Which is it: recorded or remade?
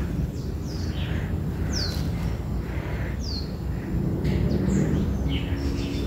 recorded